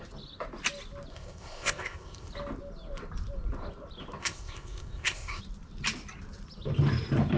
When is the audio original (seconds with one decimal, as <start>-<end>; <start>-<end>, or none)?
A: 0.0-1.1; 2.3-4.2; 5.4-7.4